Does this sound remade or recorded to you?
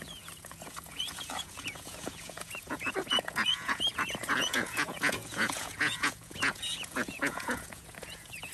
remade